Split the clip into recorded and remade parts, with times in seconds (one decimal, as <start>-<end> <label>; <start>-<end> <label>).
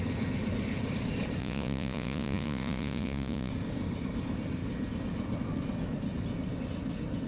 0.0-1.4 recorded; 1.4-3.5 remade; 3.5-7.3 recorded